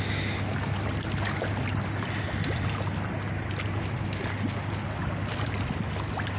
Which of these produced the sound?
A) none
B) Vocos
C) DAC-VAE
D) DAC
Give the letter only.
A